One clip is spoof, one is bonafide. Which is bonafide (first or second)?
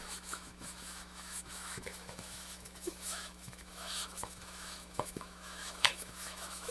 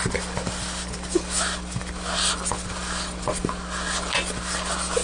second